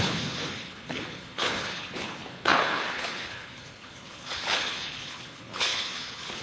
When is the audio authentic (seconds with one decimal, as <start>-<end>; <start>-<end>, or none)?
none